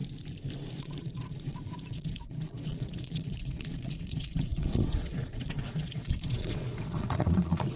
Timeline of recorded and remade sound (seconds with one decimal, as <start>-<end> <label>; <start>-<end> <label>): 0.0-0.8 recorded; 0.8-7.8 remade